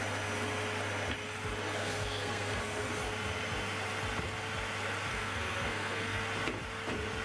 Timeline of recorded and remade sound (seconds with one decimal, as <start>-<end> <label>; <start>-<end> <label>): 0.0-1.8 recorded; 1.8-2.9 remade; 2.9-5.1 recorded; 5.1-6.2 remade; 6.2-7.2 recorded